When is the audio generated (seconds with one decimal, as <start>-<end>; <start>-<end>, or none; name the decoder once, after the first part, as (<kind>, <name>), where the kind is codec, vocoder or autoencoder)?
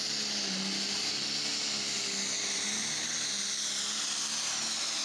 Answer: none